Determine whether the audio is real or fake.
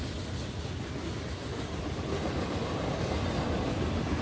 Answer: real